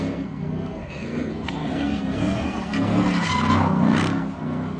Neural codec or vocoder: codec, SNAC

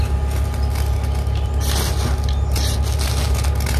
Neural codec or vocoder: none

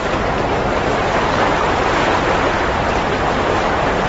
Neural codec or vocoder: vocoder, BigVGAN v2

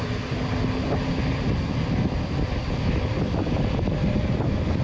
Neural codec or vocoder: none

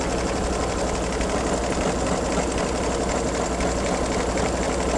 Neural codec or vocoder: none